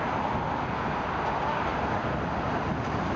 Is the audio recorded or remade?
recorded